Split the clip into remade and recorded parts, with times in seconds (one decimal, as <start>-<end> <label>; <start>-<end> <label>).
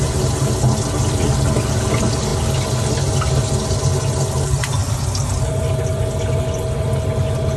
0.0-7.6 recorded